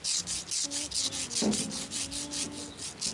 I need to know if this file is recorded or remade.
recorded